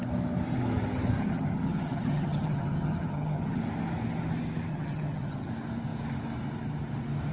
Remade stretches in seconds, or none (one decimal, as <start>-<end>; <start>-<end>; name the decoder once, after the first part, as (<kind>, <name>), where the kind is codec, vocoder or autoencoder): 1.2-3.6 (vocoder, HiFi-GAN); 4.7-5.5